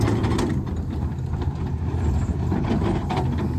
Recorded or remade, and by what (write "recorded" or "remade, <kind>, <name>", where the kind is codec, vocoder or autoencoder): remade, vocoder, BigVGAN v2